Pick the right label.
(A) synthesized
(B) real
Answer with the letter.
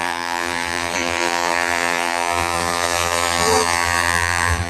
A